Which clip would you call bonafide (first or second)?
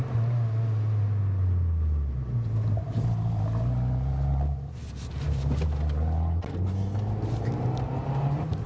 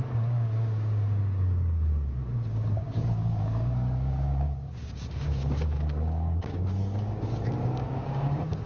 first